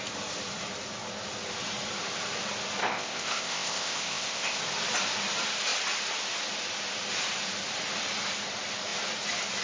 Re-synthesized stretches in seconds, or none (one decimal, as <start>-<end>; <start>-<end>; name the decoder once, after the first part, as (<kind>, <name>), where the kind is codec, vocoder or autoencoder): 2.8-4.6 (codec, ZipCodec)